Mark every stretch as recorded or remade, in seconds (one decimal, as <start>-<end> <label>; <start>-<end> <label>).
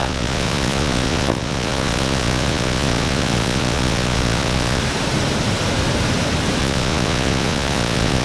0.0-4.8 remade; 4.8-6.6 recorded; 6.6-8.2 remade